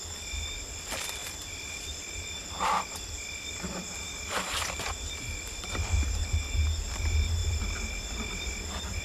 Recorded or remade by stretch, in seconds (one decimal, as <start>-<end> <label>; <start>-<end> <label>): 0.0-1.2 recorded; 1.2-6.2 remade; 6.2-7.4 recorded; 7.4-9.0 remade